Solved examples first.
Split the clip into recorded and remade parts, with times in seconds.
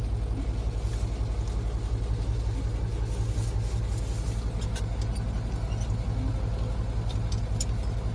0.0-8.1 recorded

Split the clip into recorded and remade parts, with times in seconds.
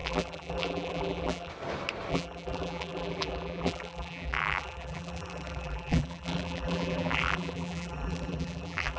0.0-1.5 remade; 1.5-2.1 recorded; 2.1-9.0 remade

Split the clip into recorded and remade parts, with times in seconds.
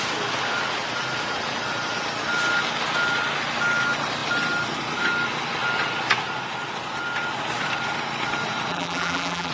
0.0-8.7 recorded; 8.7-9.5 remade